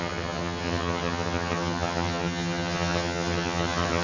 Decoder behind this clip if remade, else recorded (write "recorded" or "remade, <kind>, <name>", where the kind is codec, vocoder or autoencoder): remade, vocoder, HiFi-GAN